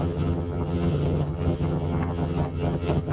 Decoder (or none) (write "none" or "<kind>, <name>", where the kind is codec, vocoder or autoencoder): vocoder, HiFi-GAN